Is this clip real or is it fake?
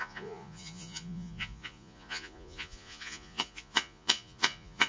fake